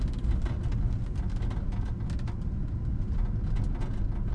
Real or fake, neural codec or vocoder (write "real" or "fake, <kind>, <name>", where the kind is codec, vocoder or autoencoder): real